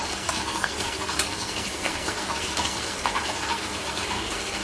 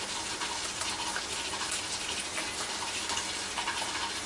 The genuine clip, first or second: second